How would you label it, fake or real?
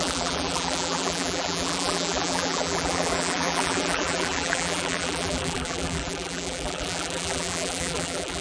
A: fake